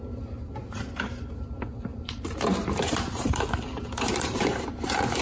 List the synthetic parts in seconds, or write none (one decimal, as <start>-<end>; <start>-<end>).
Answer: 1.9-4.4